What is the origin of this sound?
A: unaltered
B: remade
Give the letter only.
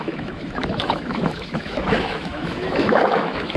B